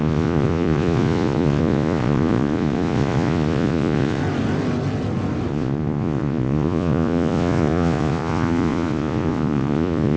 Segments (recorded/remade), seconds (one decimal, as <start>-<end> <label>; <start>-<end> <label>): 0.0-4.2 remade; 4.2-5.5 recorded; 5.5-10.2 remade